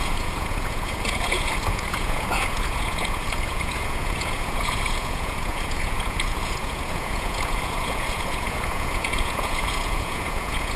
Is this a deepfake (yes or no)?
yes